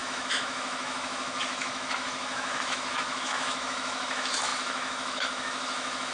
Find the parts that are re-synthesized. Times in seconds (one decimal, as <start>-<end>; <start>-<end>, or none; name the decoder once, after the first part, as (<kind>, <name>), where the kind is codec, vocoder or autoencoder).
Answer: 0.0-6.1 (autoencoder, DAC-VAE)